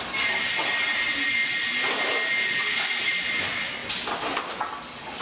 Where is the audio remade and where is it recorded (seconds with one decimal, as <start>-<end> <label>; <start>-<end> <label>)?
0.0-5.2 recorded